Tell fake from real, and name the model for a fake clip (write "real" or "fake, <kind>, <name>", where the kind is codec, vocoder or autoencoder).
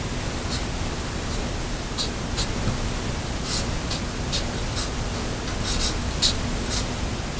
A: real